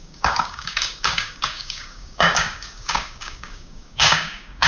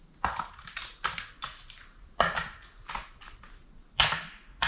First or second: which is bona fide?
second